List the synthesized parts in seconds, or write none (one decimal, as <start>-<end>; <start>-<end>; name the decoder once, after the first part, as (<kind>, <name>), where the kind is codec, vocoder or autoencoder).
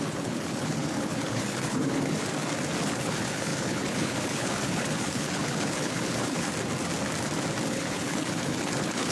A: 0.0-2.2 (codec, HILCodec); 2.8-6.5; 7.7-9.1